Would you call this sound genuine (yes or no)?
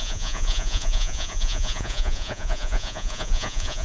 no